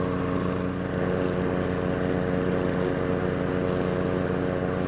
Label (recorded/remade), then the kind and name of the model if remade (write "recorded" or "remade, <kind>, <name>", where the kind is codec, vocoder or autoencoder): recorded